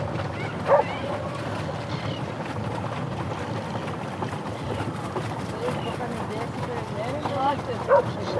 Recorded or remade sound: recorded